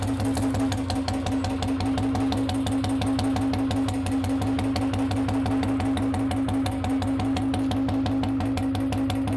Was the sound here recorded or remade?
recorded